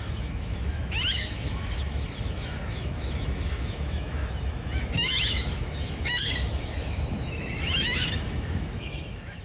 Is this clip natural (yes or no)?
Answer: no